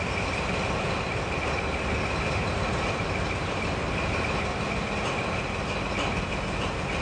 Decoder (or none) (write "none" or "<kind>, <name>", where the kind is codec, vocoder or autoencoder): none